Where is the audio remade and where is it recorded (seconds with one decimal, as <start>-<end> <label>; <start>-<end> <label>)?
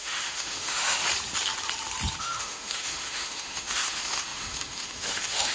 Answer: 0.0-1.0 remade; 1.0-2.2 recorded; 2.2-5.5 remade